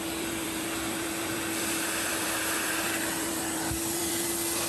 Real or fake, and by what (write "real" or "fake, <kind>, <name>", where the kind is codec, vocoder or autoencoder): fake, vocoder, BigVGAN v2